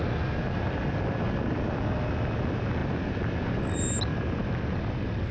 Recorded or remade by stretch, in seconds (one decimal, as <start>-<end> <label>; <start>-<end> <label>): 0.0-5.3 recorded